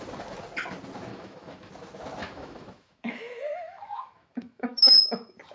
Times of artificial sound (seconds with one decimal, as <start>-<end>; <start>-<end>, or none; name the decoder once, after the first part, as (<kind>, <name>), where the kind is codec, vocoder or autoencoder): 1.1-1.7 (autoencoder, DAC-VAE); 2.2-4.9